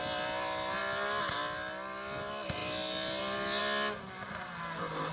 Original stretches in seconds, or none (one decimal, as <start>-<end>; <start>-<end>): 0.0-5.1